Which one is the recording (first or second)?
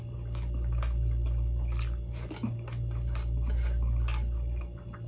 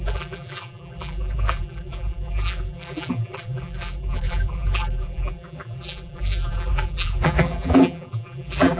first